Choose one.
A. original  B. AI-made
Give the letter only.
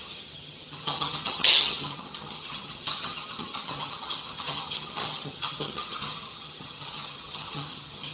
B